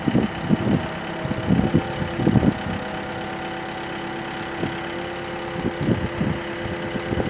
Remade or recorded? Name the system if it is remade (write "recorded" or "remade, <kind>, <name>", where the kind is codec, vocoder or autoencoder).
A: recorded